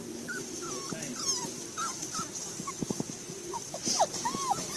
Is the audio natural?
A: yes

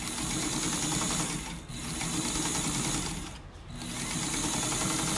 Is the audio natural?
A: yes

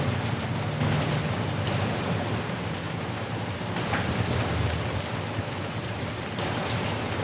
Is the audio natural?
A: yes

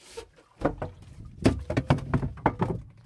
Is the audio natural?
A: yes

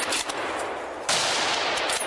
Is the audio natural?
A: yes